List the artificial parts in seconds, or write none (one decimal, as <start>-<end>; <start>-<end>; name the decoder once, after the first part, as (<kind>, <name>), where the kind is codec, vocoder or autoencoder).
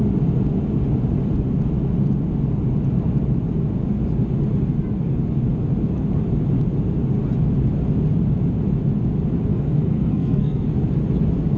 9.5-10.7 (codec, SNAC)